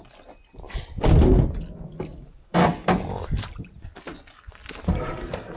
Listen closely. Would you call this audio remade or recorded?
recorded